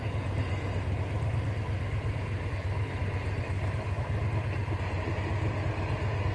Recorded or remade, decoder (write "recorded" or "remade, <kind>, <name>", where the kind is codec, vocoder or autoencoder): recorded